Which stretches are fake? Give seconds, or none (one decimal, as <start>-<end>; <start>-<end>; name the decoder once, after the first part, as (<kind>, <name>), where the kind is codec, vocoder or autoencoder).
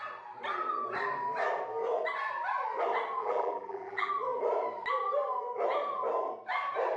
3.2-4.1 (vocoder, BigVGAN v2)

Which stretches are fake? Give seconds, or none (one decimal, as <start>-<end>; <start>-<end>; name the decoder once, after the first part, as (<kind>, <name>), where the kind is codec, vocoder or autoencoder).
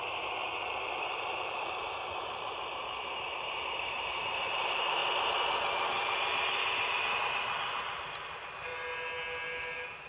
0.0-5.0 (vocoder, BigVGAN v2); 7.7-8.7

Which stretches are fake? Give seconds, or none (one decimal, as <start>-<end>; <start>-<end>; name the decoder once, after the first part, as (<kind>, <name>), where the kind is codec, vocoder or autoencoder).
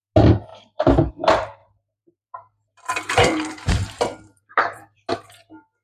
1.6-5.1 (vocoder, BigVGAN v2)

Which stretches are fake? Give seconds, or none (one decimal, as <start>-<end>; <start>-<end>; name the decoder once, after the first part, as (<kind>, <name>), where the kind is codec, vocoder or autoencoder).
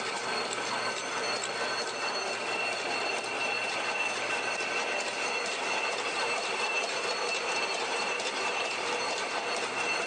5.8-10.1 (vocoder, BigVGAN v2)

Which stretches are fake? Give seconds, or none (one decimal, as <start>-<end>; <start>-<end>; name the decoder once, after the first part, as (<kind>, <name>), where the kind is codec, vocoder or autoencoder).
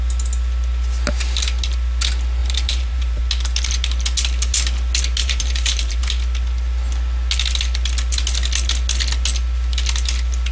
2.4-3.2 (vocoder, BigVGAN v2); 5.2-6.0